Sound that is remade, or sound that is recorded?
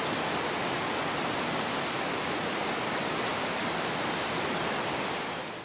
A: recorded